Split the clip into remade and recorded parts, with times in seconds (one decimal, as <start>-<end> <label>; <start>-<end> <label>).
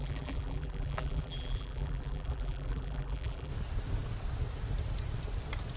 0.0-3.5 remade; 3.5-5.8 recorded